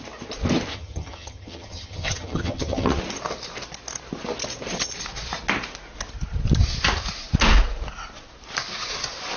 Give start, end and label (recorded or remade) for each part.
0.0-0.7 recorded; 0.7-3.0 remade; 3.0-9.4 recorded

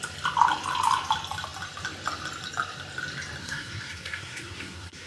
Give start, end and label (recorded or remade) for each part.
0.0-3.4 recorded; 3.4-5.1 remade

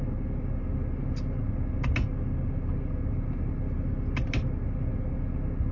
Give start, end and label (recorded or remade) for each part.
0.0-5.7 recorded

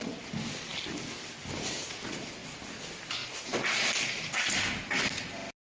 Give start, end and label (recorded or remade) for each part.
0.0-3.2 recorded; 3.2-4.3 remade; 4.3-5.7 recorded

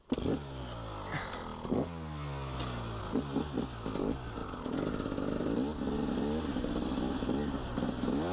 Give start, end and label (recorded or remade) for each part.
0.0-8.3 recorded

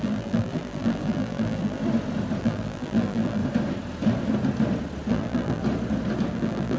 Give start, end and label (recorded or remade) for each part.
0.0-1.8 remade; 1.8-2.4 recorded; 2.4-3.4 remade; 3.4-5.1 recorded; 5.1-5.6 remade; 5.6-6.3 recorded; 6.3-6.8 remade